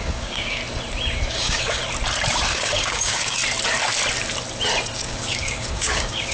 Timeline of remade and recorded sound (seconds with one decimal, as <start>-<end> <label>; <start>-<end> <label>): 0.0-0.6 remade; 0.6-1.3 recorded; 1.3-1.8 remade; 1.8-2.5 recorded; 2.5-3.4 remade; 3.4-4.9 recorded; 4.9-6.3 remade